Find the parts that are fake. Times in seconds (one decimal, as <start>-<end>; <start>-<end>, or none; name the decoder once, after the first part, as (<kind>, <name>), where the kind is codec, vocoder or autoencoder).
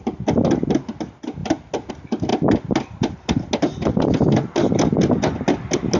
none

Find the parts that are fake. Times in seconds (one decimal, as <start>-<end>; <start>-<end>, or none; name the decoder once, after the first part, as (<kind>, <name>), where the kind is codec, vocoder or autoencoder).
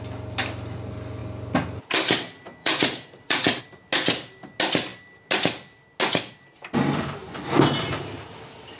2.6-3.6 (vocoder, BigVGAN v2)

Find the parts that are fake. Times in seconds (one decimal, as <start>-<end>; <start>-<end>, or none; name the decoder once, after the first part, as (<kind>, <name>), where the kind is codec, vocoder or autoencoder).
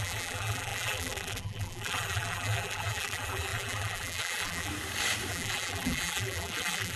0.0-4.7 (vocoder, BigVGAN v2); 5.3-7.0